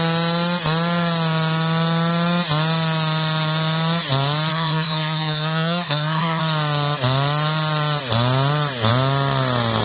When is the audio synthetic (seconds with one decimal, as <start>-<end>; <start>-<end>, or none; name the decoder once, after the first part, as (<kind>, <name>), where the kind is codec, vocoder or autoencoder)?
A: 4.5-6.4 (codec, SNAC)